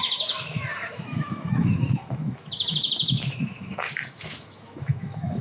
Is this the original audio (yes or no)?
no